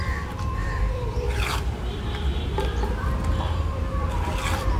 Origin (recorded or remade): remade